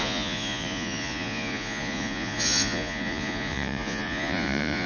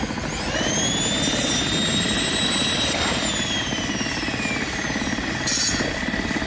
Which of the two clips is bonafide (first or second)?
second